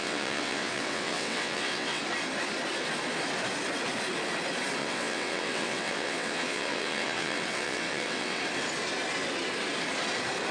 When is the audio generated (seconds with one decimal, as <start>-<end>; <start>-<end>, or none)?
0.0-2.0; 4.8-8.4